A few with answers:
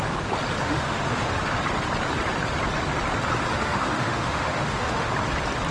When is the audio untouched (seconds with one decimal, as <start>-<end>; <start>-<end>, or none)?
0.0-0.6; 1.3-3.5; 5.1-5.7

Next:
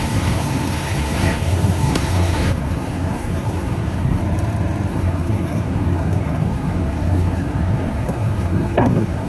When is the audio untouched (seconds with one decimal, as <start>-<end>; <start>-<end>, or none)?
4.2-4.9

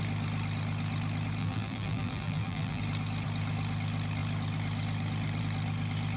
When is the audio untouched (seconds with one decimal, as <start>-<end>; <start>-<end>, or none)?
0.0-1.4; 2.8-6.2